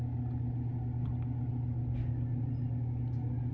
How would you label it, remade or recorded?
recorded